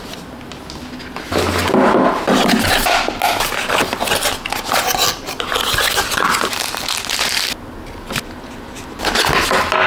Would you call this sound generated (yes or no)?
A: no